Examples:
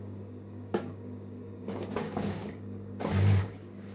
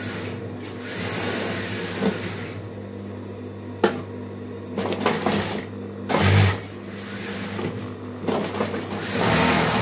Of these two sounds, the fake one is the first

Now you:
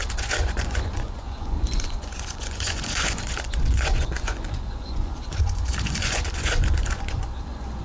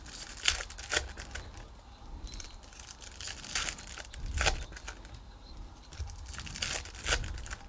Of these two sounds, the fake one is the first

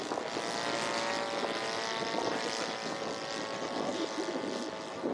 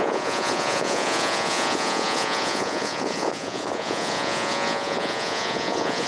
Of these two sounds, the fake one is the second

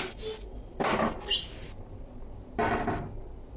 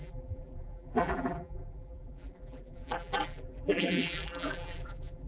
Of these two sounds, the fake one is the second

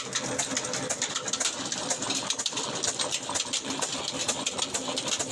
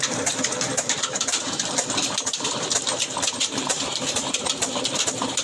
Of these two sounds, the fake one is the second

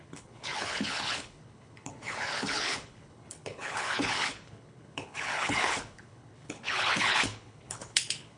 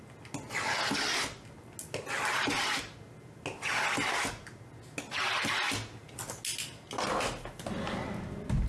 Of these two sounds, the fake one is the first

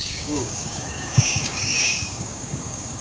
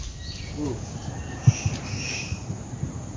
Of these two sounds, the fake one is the first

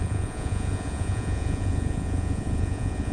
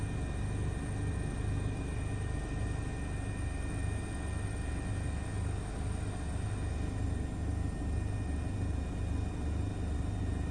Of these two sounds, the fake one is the first